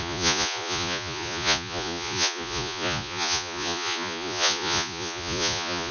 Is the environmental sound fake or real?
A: fake